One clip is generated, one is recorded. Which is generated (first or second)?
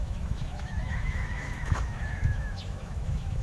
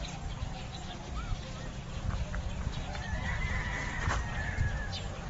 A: first